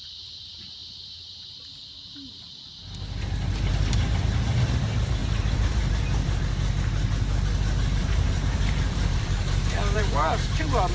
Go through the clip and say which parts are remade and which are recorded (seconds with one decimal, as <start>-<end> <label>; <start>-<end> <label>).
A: 0.0-5.2 recorded; 5.2-6.4 remade; 6.4-8.0 recorded; 8.0-10.9 remade